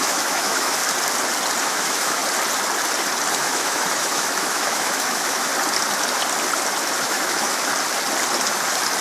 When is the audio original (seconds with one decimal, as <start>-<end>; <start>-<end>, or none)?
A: 0.8-1.6; 2.2-3.3; 5.5-7.0; 7.7-9.0